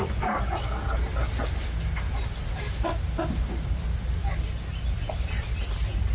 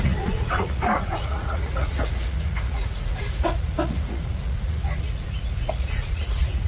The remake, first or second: second